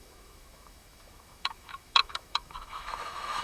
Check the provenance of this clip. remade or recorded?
remade